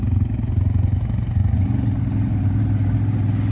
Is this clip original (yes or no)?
yes